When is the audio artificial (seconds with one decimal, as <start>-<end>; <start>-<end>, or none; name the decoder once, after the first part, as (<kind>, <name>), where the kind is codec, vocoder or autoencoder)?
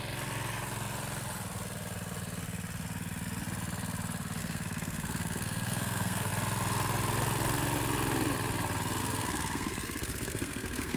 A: 4.4-6.3 (codec, SNAC); 9.0-11.0